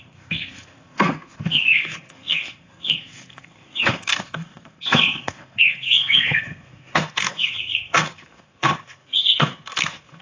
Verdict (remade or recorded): remade